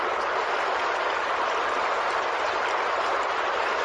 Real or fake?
real